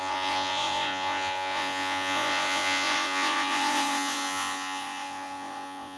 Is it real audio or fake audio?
fake